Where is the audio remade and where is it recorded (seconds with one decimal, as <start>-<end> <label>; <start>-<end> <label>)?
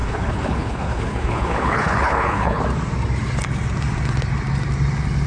0.0-2.6 remade; 2.6-5.3 recorded